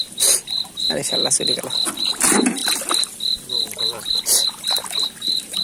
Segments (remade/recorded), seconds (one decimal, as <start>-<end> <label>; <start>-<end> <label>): 0.0-1.2 remade; 1.2-1.9 recorded; 1.9-2.6 remade; 2.6-3.8 recorded; 3.8-5.6 remade